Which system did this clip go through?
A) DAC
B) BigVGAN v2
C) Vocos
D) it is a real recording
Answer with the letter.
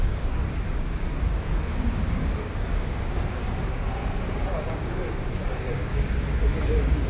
A